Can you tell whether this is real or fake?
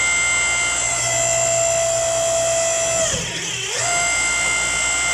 real